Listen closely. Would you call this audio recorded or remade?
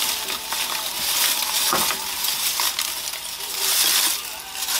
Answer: recorded